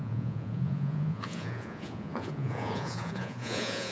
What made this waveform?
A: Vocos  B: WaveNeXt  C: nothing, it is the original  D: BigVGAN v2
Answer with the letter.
A